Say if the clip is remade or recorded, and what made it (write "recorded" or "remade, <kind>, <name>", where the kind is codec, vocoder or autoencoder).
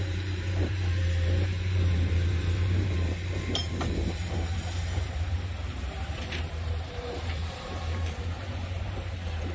remade, vocoder, BigVGAN v2